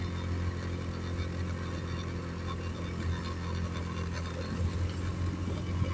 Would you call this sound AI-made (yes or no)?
no